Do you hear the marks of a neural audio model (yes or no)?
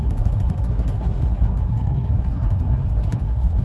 yes